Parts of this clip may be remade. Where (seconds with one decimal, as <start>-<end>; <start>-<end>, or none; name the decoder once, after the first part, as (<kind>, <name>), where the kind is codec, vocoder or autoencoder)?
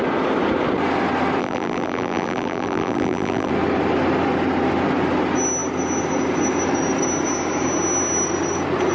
1.4-3.5 (vocoder, BigVGAN v2)